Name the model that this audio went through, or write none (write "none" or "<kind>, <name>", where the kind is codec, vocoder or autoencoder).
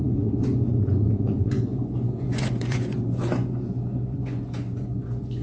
vocoder, Vocos